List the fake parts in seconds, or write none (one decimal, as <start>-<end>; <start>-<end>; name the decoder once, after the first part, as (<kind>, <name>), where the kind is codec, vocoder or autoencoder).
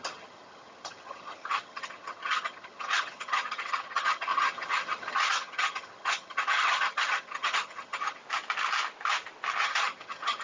0.0-8.2 (vocoder, HiFi-GAN); 9.6-10.4